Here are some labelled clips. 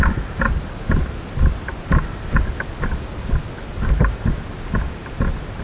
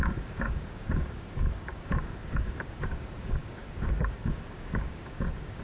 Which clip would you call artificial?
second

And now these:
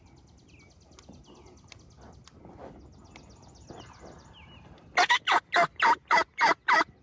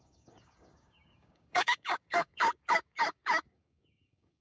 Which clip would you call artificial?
second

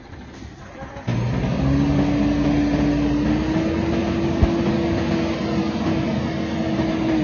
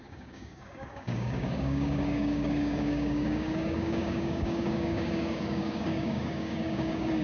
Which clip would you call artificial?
second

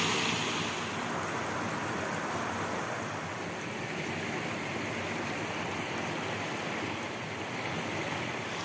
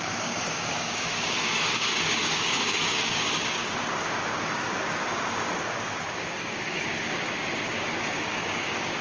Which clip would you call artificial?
second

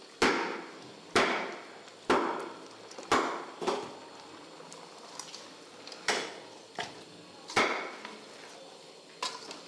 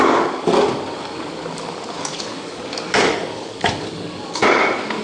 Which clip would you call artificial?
second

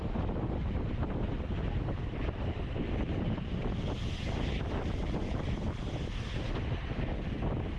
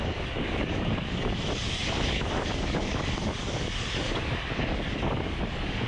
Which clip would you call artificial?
second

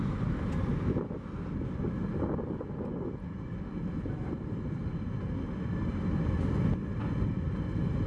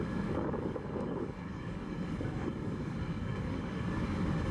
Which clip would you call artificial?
second